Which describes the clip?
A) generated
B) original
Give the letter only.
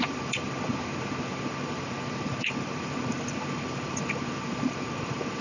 A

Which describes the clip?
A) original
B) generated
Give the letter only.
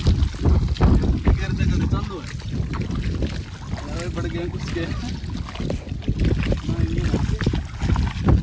A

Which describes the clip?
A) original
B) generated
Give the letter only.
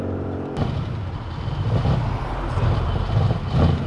B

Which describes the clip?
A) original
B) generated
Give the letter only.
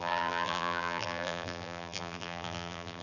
B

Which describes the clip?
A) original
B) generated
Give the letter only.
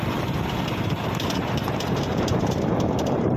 B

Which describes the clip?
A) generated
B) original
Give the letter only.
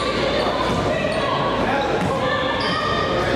B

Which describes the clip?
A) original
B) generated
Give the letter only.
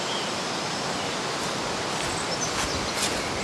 A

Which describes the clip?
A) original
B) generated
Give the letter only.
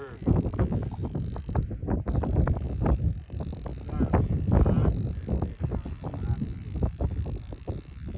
B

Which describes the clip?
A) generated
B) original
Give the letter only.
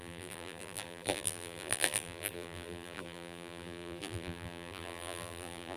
A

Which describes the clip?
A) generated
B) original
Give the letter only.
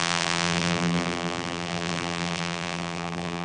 A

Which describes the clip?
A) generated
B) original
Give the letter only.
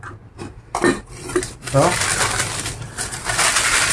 B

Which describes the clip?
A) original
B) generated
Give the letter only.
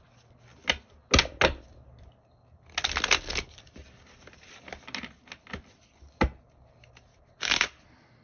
A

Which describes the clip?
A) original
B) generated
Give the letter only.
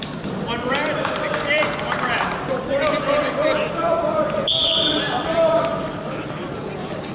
B